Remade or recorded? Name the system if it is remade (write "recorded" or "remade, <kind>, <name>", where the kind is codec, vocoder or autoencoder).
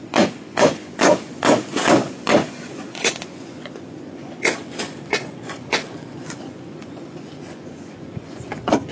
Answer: remade, vocoder, Vocos